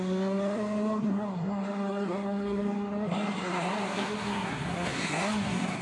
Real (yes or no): no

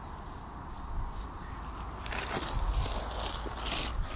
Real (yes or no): yes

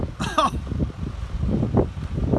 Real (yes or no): yes